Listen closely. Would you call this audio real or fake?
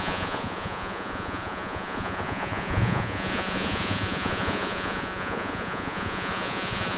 fake